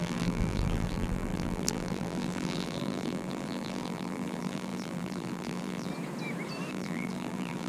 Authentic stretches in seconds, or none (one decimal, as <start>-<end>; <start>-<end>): 5.9-6.7